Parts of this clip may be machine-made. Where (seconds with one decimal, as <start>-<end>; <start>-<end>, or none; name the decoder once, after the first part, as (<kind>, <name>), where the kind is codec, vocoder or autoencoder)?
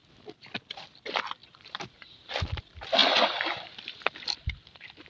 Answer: 1.4-2.6 (vocoder, BigVGAN v2)